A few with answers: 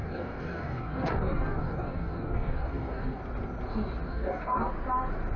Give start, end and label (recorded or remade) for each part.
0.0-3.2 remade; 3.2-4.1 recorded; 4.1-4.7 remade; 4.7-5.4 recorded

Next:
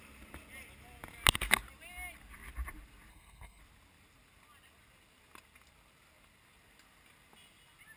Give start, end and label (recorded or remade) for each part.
0.0-3.1 recorded; 3.1-3.6 remade; 3.6-8.0 recorded

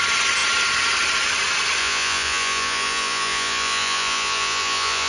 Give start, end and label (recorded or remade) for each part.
0.0-1.8 recorded; 1.8-5.1 remade

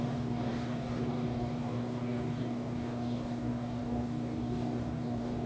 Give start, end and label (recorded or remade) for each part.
0.0-5.5 remade

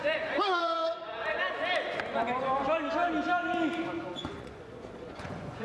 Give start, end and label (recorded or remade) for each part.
0.0-1.4 remade; 1.4-4.0 recorded; 4.0-5.6 remade

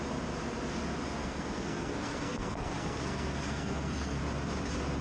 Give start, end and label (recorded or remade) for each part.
0.0-1.2 recorded; 1.2-4.2 remade; 4.2-5.0 recorded

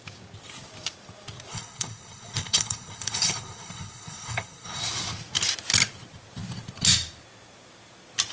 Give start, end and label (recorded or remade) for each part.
0.0-1.5 recorded; 1.5-4.8 remade; 4.8-8.3 recorded